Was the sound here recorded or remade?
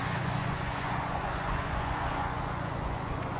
remade